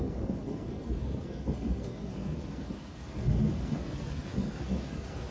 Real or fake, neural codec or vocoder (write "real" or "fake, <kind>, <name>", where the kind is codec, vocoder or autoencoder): fake, codec, SNAC